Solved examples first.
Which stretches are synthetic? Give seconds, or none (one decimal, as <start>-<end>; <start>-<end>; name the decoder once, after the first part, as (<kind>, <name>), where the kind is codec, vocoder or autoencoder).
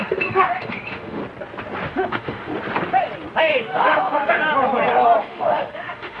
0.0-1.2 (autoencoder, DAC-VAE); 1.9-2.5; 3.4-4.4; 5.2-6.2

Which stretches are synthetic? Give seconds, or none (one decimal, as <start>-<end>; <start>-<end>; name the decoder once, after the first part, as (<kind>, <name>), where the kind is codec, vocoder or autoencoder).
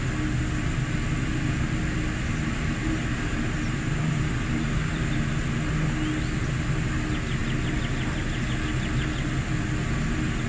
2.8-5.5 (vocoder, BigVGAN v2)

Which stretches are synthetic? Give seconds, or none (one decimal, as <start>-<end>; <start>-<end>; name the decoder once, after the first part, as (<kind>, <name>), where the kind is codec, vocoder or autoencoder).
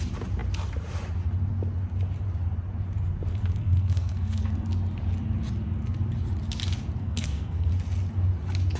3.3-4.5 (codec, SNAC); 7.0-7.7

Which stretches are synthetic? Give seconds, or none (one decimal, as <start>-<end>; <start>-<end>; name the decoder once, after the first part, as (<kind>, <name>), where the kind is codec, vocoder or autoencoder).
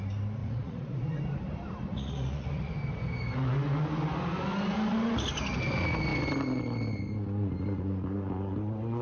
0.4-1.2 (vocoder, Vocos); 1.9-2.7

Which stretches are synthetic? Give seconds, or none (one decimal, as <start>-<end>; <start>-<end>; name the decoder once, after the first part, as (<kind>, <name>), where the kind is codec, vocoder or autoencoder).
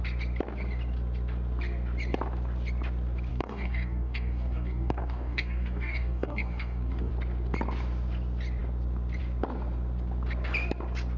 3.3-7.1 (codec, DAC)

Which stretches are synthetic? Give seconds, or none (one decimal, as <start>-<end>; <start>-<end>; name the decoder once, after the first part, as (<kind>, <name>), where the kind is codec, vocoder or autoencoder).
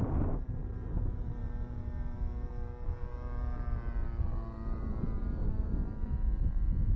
none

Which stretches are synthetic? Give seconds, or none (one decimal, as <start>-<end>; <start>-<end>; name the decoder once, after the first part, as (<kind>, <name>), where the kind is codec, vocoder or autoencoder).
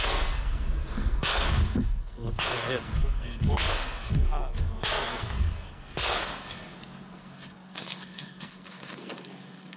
0.0-9.8 (codec, SNAC)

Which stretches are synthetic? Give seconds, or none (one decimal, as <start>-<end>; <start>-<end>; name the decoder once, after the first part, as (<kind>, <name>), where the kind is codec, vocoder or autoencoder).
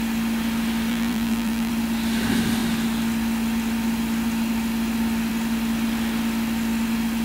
0.9-1.7 (vocoder, BigVGAN v2)